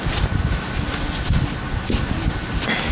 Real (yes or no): yes